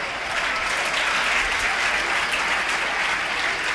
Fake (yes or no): no